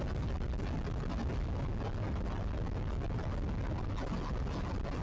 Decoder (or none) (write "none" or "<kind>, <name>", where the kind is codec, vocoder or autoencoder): none